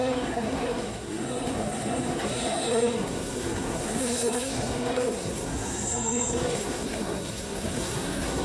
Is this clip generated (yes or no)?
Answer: yes